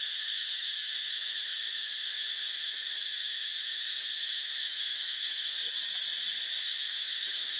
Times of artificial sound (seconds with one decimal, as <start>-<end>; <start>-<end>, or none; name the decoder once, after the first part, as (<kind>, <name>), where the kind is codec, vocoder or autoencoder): 0.0-5.6 (autoencoder, DAC-VAE); 6.6-7.6